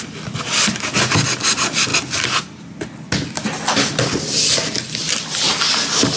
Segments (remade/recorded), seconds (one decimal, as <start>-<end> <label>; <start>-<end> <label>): 0.0-6.2 recorded

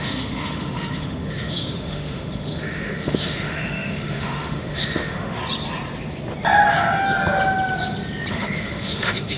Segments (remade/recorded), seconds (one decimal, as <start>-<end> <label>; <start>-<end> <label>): 0.0-5.4 remade; 5.4-8.3 recorded; 8.3-9.4 remade

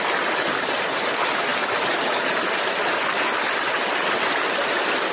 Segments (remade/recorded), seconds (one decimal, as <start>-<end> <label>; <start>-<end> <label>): 0.0-5.1 recorded

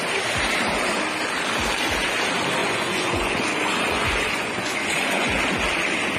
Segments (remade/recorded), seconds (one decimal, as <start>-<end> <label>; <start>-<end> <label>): 0.0-2.6 recorded; 2.6-5.4 remade; 5.4-6.2 recorded

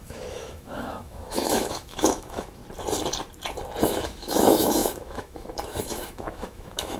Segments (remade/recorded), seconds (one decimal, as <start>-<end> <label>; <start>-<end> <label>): 0.0-2.6 remade; 2.6-3.8 recorded; 3.8-7.0 remade

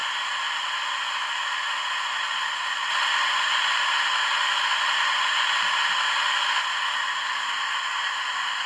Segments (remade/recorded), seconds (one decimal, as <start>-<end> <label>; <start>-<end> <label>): 0.0-8.7 recorded

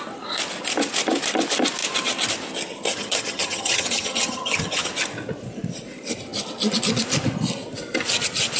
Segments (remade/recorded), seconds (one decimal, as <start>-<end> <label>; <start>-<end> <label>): 0.0-2.9 recorded; 2.9-4.9 remade; 4.9-8.6 recorded

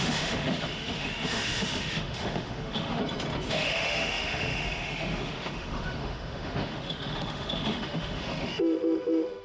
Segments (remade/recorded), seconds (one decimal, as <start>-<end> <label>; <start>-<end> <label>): 0.0-3.0 remade; 3.0-3.5 recorded; 3.5-9.4 remade